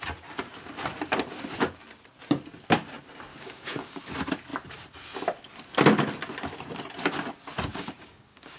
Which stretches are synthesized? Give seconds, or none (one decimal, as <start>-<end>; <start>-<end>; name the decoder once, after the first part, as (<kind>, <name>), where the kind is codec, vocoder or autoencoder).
3.3-4.0 (codec, DAC); 7.7-8.6